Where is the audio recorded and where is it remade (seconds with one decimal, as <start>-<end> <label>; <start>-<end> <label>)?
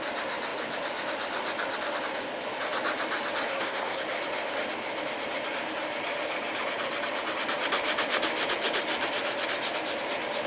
0.0-3.5 recorded; 3.5-4.0 remade; 4.0-10.5 recorded